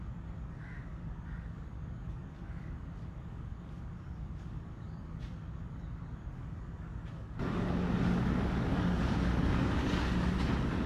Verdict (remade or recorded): remade